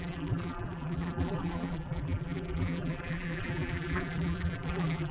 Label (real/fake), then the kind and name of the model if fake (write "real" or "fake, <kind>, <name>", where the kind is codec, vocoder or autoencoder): fake, vocoder, BigVGAN v2